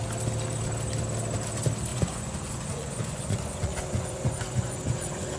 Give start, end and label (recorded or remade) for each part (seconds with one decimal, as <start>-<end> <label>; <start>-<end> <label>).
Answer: 0.0-1.9 recorded; 1.9-5.4 remade